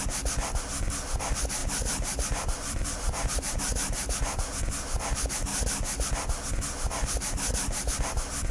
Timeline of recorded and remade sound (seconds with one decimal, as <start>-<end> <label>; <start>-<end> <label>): 0.0-1.6 recorded; 1.6-4.6 remade; 4.6-8.5 recorded